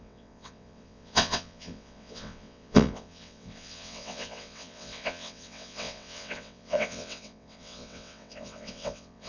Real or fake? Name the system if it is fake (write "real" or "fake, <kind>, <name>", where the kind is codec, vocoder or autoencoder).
fake, vocoder, WaveNeXt